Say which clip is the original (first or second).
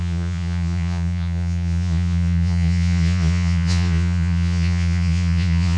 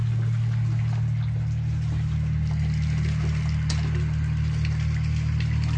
second